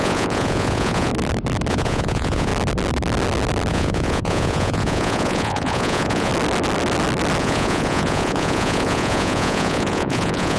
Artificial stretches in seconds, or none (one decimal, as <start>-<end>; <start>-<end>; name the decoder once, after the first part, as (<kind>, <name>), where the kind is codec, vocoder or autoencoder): 0.0-1.1 (vocoder, Vocos); 1.7-2.5; 3.7-6.3; 7.4-10.6